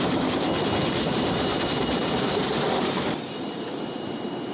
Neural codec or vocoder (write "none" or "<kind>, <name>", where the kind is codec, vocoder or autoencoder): vocoder, BigVGAN v2